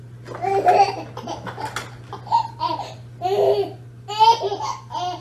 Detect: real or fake real